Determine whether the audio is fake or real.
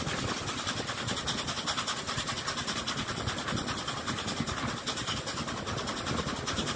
real